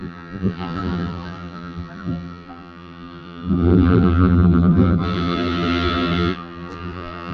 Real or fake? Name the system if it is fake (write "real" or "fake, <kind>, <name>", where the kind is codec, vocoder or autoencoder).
fake, vocoder, BigVGAN v2